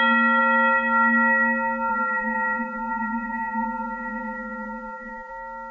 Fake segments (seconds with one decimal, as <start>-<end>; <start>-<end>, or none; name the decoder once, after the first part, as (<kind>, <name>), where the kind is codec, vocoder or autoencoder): 1.9-5.3 (vocoder, BigVGAN v2)